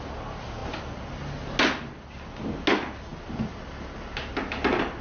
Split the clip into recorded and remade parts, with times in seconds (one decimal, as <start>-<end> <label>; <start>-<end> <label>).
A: 0.0-5.0 recorded